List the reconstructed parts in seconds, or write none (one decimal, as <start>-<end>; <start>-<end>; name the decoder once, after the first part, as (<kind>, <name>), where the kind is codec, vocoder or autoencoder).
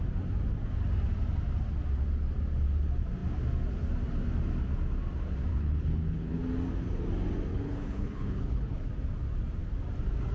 5.5-6.4 (codec, HILCodec); 7.5-8.9